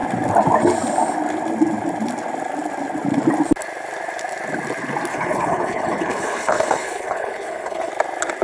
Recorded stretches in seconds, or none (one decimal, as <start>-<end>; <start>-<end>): 0.0-5.1; 7.9-8.4